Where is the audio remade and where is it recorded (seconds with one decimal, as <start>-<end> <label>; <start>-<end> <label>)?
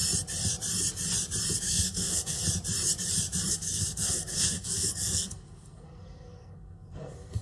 0.0-1.6 recorded; 1.6-2.4 remade; 2.4-3.5 recorded; 3.5-7.4 remade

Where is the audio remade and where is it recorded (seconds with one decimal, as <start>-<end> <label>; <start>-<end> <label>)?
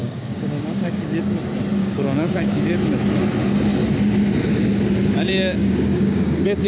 0.0-1.2 remade; 1.2-1.8 recorded; 1.8-2.6 remade; 2.6-5.6 recorded; 5.6-6.7 remade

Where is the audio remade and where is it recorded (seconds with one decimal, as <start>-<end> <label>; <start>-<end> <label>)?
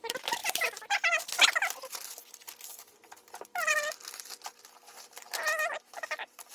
0.0-6.5 recorded